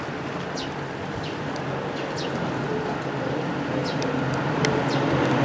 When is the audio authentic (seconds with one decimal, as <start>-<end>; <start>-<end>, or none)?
3.8-4.4